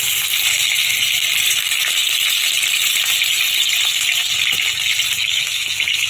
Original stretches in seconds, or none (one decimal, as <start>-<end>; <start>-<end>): 0.0-5.2